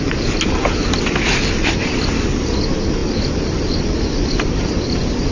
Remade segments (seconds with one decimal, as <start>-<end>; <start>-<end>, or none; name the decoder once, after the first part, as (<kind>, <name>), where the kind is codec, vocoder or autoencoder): 3.0-3.9 (vocoder, BigVGAN v2)

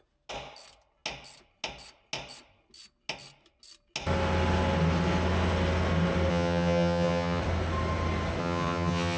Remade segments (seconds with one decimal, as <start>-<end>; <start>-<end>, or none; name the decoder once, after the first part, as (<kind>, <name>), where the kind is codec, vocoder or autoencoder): 6.3-7.4 (vocoder, HiFi-GAN); 8.4-9.2

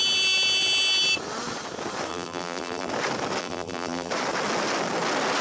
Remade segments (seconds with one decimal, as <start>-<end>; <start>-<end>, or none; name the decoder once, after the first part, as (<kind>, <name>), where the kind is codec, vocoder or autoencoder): 2.1-2.9 (vocoder, BigVGAN v2); 3.4-4.1

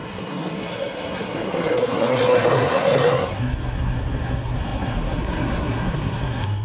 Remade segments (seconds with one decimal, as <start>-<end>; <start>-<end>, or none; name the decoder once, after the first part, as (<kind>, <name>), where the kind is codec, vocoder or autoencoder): 0.0-6.6 (codec, SNAC)

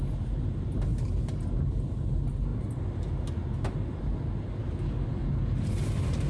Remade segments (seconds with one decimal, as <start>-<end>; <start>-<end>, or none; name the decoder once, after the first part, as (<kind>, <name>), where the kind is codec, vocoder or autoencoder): none